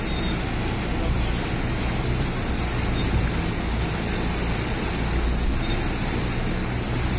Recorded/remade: recorded